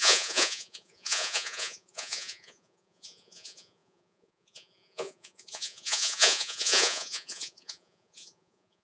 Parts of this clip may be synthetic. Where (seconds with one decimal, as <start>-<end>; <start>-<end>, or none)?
0.0-8.8